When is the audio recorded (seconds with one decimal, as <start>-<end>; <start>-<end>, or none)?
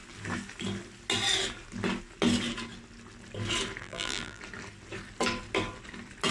0.0-3.8; 4.4-6.3